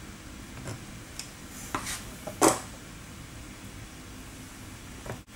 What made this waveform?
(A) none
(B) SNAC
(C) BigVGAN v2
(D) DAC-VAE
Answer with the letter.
A